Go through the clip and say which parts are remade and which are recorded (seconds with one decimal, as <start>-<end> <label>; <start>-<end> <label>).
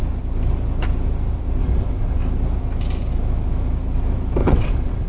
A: 0.0-1.6 recorded; 1.6-2.2 remade; 2.2-4.4 recorded; 4.4-5.1 remade